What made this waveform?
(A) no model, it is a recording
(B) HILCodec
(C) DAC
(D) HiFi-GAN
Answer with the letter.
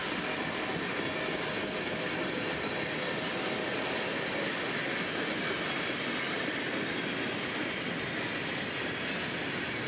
A